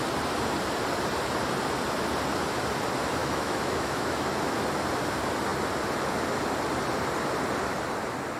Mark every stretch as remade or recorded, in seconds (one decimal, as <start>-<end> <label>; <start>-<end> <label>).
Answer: 0.0-3.2 recorded; 3.2-4.3 remade; 4.3-8.4 recorded

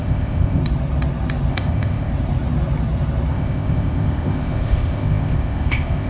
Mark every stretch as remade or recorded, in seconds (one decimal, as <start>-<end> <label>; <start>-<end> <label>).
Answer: 0.0-0.6 remade; 0.6-1.5 recorded; 1.5-2.1 remade; 2.1-3.3 recorded; 3.3-6.1 remade

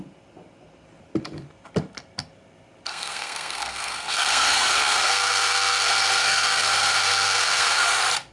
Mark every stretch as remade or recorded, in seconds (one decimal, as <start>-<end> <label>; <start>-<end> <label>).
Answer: 0.0-2.9 recorded; 2.9-7.9 remade; 7.9-8.3 recorded

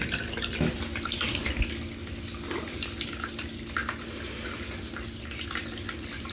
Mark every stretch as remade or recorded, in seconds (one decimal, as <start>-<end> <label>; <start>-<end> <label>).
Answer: 0.0-6.3 recorded

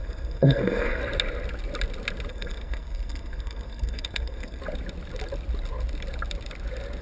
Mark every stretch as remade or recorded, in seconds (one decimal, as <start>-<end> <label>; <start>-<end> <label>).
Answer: 0.0-1.0 remade; 1.0-2.3 recorded; 2.3-4.6 remade; 4.6-7.0 recorded

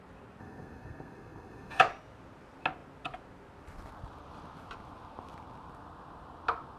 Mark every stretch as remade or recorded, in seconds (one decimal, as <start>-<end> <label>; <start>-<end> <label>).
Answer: 0.0-0.4 recorded; 0.4-1.8 remade; 1.8-6.8 recorded

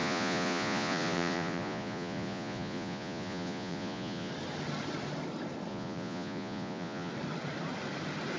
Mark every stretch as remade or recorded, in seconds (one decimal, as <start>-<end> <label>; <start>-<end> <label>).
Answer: 0.0-4.3 remade; 4.3-5.7 recorded; 5.7-7.1 remade; 7.1-8.4 recorded